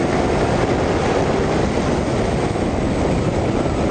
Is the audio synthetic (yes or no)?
no